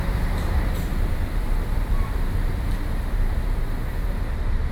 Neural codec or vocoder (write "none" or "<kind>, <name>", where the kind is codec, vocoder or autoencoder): vocoder, BigVGAN v2